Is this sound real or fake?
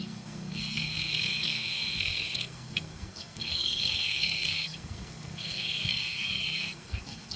fake